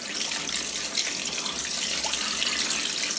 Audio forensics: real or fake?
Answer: real